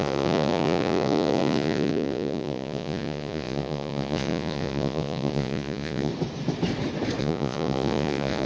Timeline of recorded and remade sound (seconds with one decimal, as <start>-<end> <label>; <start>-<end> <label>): 0.0-6.1 remade; 6.1-7.2 recorded; 7.2-8.5 remade